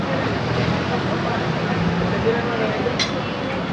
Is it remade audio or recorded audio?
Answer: recorded